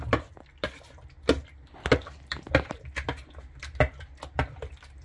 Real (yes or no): yes